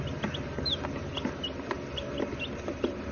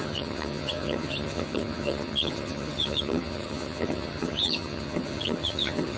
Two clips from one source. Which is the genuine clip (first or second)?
first